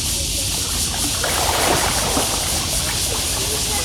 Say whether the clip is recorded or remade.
recorded